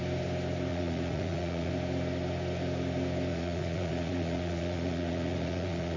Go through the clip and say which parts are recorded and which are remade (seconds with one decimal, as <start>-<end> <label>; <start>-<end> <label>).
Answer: 0.0-0.7 recorded; 0.7-1.7 remade; 1.7-3.3 recorded; 3.3-6.0 remade